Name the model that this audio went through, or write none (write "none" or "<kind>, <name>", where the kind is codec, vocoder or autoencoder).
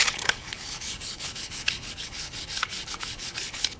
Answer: codec, HILCodec